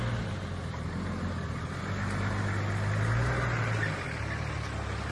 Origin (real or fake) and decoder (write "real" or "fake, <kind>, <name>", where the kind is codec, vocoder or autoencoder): real